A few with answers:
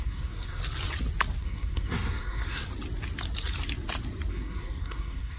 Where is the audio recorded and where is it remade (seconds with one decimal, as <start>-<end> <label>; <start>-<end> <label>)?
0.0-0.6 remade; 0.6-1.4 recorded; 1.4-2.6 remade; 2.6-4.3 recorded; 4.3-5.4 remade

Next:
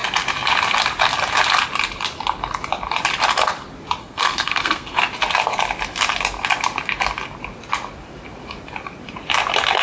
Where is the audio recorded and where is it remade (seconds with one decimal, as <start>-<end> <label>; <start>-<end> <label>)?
0.0-4.0 recorded; 4.0-5.0 remade; 5.0-9.8 recorded

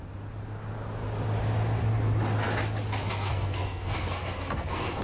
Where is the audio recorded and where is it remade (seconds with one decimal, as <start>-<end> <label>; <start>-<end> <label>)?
0.0-3.1 recorded; 3.1-5.0 remade

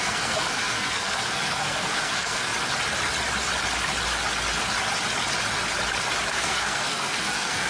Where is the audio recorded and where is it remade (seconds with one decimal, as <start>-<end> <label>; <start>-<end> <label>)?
0.0-2.5 remade; 2.5-6.3 recorded; 6.3-7.7 remade

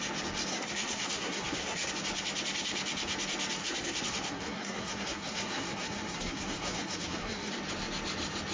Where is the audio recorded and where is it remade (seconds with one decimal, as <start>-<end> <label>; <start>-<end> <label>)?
0.0-0.5 recorded; 0.5-1.9 remade; 1.9-3.6 recorded; 3.6-7.5 remade; 7.5-8.5 recorded

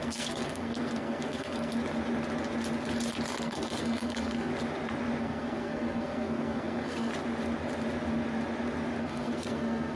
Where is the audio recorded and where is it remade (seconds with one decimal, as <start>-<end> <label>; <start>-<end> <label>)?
0.0-1.7 remade; 1.7-3.4 recorded; 3.4-4.5 remade; 4.5-5.2 recorded; 5.2-7.1 remade; 7.1-9.0 recorded; 9.0-10.0 remade